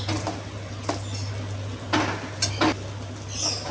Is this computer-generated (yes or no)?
no